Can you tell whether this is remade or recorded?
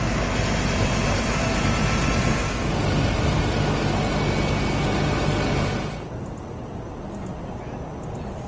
recorded